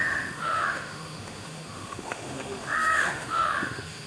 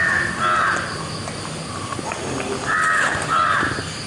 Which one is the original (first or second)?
second